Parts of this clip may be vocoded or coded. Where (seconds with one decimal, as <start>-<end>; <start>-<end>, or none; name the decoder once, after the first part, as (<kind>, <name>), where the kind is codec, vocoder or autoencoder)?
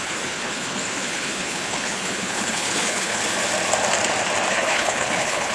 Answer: 0.0-3.2 (codec, HILCodec); 4.5-5.5